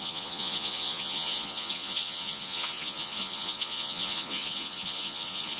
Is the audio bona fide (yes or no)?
no